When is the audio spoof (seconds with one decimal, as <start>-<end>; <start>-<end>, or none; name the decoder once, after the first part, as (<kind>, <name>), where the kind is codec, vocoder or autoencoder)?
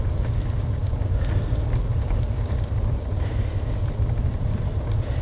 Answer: none